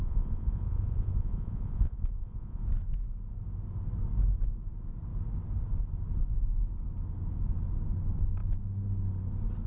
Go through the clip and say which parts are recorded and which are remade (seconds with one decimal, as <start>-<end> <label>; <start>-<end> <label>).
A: 0.0-2.6 remade; 2.6-9.7 recorded